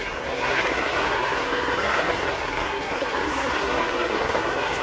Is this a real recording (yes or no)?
no